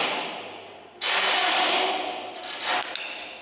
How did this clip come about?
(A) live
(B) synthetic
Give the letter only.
A